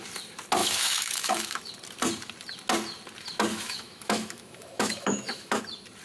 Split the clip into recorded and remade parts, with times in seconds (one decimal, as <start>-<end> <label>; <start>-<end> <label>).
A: 0.0-0.6 recorded; 0.6-1.7 remade; 1.7-3.5 recorded; 3.5-5.6 remade; 5.6-6.0 recorded